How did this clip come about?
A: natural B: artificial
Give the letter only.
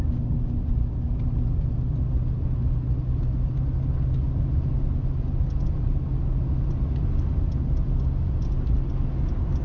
A